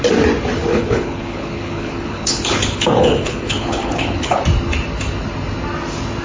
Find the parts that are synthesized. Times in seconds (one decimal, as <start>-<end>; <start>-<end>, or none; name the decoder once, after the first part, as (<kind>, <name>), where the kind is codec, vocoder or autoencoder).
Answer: 0.7-4.4 (codec, HILCodec)